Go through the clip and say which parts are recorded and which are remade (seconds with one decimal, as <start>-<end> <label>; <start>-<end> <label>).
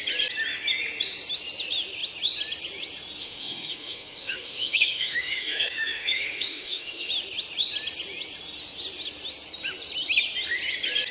0.0-3.2 recorded; 3.2-7.1 remade; 7.1-11.1 recorded